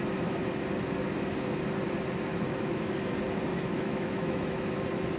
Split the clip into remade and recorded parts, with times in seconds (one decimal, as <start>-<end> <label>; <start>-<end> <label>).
0.0-2.3 recorded; 2.3-2.9 remade; 2.9-3.5 recorded; 3.5-4.8 remade; 4.8-5.2 recorded